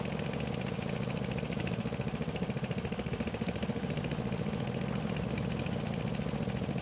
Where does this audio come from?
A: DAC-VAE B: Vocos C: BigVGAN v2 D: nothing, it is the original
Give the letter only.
D